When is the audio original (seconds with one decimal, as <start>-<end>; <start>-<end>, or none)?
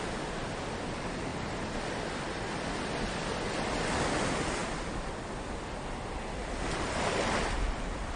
0.0-8.2